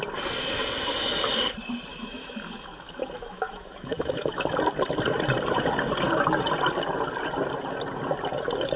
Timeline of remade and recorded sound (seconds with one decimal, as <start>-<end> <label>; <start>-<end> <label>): 0.0-1.9 recorded; 1.9-4.5 remade; 4.5-8.8 recorded

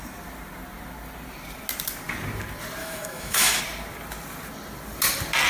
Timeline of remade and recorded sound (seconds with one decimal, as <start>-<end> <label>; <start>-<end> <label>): 0.0-2.8 recorded; 2.8-3.6 remade; 3.6-5.5 recorded

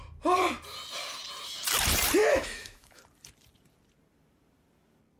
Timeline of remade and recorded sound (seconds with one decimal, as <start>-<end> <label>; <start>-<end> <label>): 0.0-2.2 recorded; 2.2-3.0 remade; 3.0-5.2 recorded

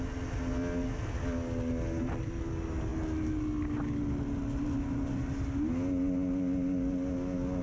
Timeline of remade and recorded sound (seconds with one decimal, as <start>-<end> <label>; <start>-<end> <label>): 0.0-7.6 recorded

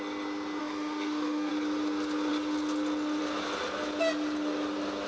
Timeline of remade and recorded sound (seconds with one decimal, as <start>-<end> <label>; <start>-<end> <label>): 0.0-0.6 recorded; 0.6-1.5 remade; 1.5-5.1 recorded

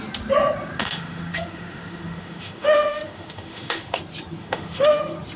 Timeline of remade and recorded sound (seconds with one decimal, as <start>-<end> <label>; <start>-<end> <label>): 0.0-0.8 recorded; 0.8-4.0 remade; 4.0-4.4 recorded; 4.4-5.0 remade; 5.0-5.4 recorded

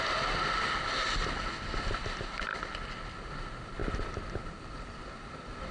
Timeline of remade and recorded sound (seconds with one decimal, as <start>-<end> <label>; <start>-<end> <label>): 0.0-5.7 recorded

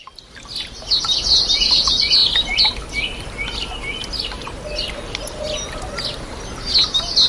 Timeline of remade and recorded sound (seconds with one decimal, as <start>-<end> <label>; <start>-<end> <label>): 0.0-7.3 recorded